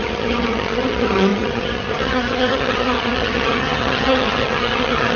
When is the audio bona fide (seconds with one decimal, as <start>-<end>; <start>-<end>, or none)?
none